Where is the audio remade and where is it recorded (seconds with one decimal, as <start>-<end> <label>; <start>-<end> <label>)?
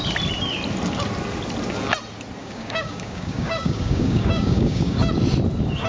0.0-2.4 recorded; 2.4-5.0 remade; 5.0-5.9 recorded